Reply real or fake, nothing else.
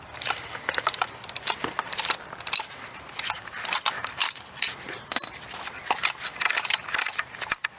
fake